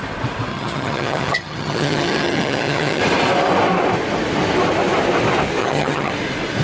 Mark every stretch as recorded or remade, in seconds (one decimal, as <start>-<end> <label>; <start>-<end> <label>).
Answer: 0.0-0.5 recorded; 0.5-3.0 remade; 3.0-5.6 recorded; 5.6-6.1 remade; 6.1-6.6 recorded